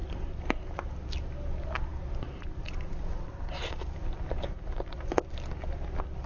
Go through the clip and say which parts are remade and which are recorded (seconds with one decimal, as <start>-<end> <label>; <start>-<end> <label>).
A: 0.0-6.3 recorded